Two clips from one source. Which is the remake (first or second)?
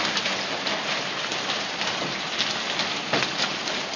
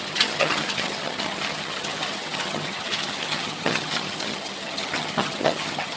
second